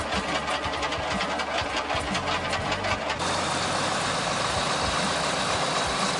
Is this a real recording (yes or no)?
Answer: yes